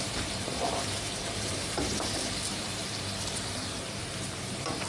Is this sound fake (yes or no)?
yes